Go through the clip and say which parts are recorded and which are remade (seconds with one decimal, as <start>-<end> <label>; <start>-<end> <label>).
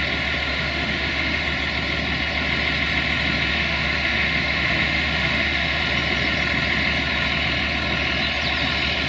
0.0-0.5 recorded; 0.5-1.4 remade; 1.4-3.5 recorded; 3.5-5.8 remade; 5.8-9.1 recorded